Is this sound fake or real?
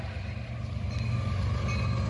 real